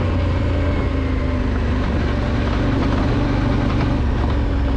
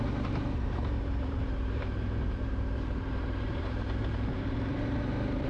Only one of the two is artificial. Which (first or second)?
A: second